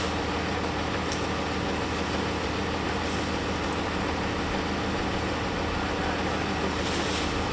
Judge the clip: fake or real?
real